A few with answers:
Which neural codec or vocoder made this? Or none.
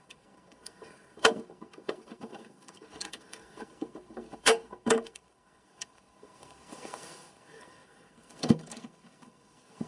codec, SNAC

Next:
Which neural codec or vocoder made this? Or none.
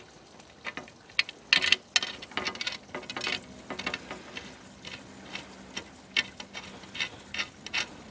none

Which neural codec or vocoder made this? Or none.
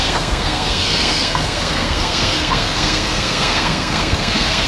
codec, SNAC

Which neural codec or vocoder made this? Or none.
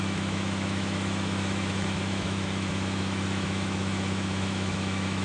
autoencoder, DAC-VAE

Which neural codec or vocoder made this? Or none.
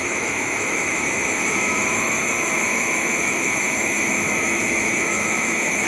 autoencoder, DAC-VAE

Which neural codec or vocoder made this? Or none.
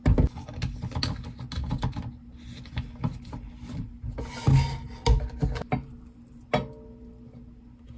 none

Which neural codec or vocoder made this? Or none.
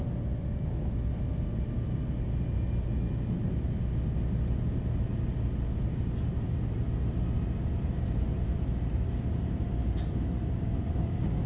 none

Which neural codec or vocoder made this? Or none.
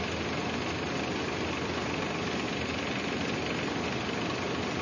none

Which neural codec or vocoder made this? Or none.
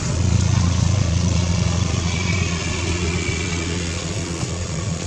vocoder, Vocos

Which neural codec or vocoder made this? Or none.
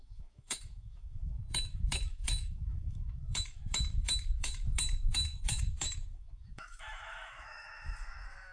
autoencoder, DAC-VAE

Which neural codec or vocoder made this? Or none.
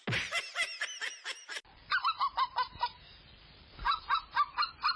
none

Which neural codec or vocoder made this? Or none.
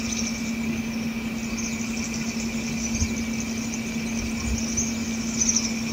none